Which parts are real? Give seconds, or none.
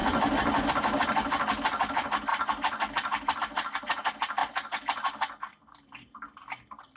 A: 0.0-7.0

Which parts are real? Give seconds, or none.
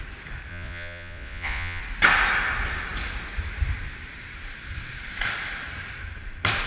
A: 0.0-0.5; 1.8-6.7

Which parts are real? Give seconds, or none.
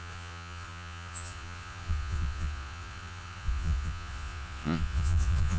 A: none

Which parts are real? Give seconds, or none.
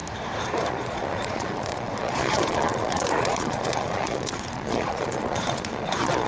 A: 0.0-0.7